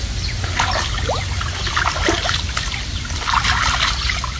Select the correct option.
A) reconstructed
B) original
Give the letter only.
B